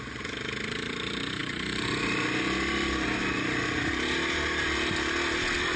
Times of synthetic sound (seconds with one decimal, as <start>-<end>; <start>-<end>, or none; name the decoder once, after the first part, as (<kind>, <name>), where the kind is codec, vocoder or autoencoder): none